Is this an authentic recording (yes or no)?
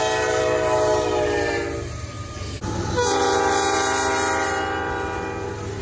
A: yes